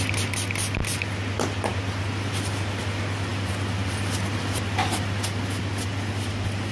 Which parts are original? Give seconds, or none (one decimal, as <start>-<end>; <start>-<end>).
0.0-6.7